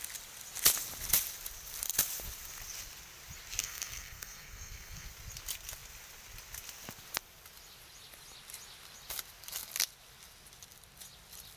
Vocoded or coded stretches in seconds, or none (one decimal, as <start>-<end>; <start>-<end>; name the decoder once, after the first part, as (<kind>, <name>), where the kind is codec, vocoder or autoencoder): 3.6-5.1 (codec, SNAC)